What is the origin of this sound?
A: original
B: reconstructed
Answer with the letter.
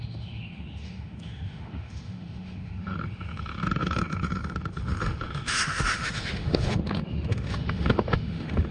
B